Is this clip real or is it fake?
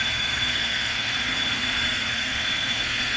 fake